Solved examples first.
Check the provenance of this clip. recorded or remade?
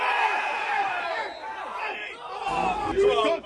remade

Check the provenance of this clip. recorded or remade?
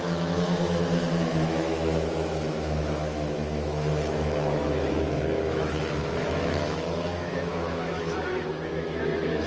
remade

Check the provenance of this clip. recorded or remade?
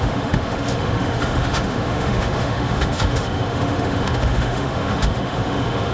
remade